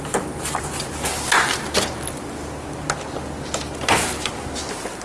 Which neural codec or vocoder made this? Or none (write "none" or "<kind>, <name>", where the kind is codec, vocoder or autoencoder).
none